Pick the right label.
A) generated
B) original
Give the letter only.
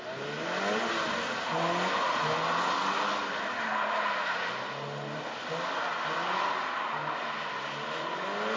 B